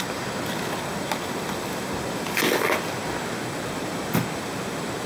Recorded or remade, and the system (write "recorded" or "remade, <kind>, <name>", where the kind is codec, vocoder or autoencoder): recorded